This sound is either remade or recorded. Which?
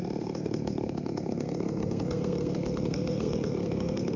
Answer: remade